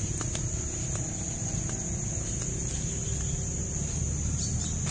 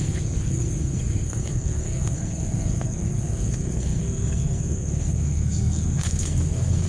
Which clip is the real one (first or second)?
first